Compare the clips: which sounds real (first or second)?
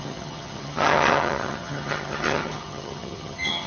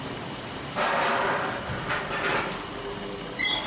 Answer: second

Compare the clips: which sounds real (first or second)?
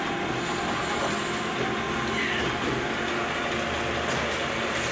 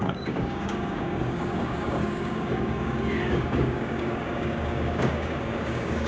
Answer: first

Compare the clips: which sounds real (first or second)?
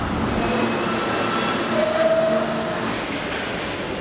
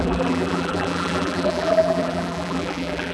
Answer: first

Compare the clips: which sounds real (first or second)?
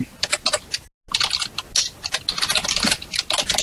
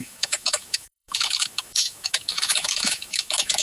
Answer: first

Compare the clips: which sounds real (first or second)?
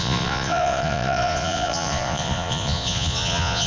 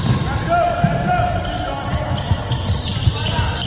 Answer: second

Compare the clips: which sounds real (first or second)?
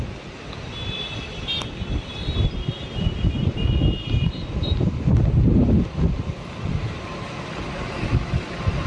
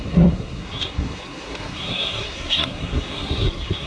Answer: first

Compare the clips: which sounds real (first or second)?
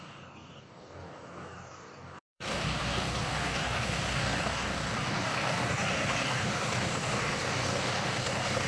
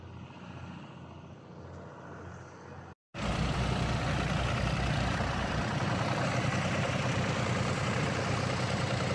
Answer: second